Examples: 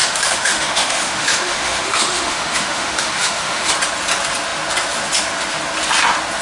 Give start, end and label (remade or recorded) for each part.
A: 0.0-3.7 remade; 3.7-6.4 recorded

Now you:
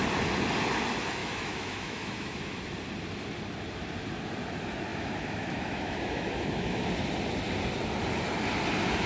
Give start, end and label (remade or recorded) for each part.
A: 0.0-1.2 recorded; 1.2-2.6 remade; 2.6-4.9 recorded; 4.9-6.9 remade; 6.9-9.1 recorded